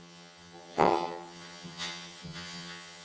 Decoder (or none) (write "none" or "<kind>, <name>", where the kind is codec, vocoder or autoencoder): vocoder, HiFi-GAN